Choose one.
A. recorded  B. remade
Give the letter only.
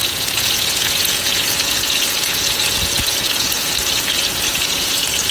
B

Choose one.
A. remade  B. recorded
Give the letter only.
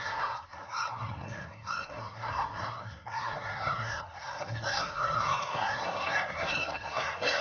A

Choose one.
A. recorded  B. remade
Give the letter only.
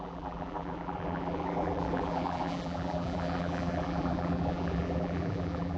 B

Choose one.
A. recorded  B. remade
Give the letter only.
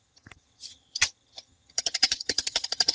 B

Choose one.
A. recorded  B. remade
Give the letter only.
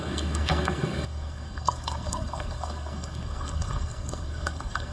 B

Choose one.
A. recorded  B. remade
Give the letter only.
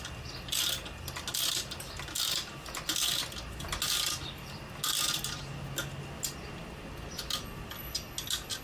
A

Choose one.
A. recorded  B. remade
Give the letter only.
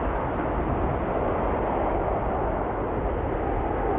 A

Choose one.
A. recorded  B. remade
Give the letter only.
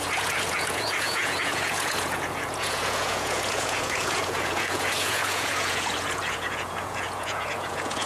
B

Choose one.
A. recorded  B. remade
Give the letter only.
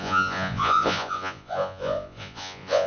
B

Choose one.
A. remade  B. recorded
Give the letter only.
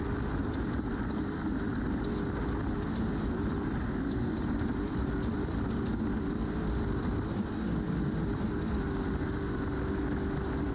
B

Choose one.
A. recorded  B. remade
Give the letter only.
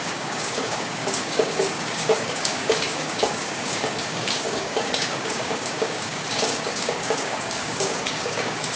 B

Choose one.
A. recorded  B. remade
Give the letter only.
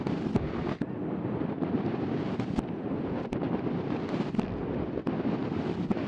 B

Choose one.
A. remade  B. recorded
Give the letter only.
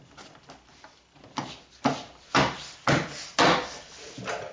B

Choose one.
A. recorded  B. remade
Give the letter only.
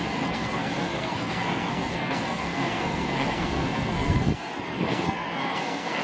B